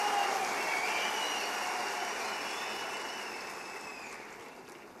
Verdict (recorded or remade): recorded